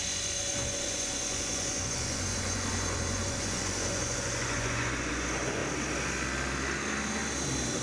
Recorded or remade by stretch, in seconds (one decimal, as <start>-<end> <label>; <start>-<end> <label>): 0.0-5.6 remade; 5.6-7.8 recorded

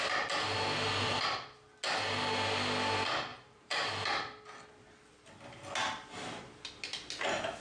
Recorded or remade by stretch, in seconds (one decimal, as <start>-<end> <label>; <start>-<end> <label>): 0.0-3.3 recorded; 3.3-3.9 remade; 3.9-7.6 recorded

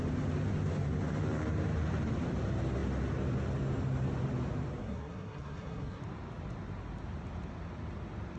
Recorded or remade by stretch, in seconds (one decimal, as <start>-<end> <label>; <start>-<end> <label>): 0.0-4.8 recorded; 4.8-6.0 remade; 6.0-8.4 recorded